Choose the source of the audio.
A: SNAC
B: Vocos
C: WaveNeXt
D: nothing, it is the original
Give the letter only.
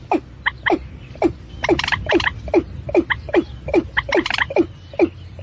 D